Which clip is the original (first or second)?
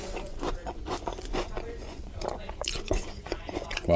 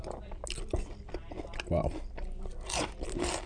second